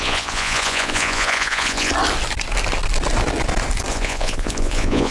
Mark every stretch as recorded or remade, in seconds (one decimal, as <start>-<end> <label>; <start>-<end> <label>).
0.0-1.9 remade; 1.9-3.9 recorded; 3.9-5.1 remade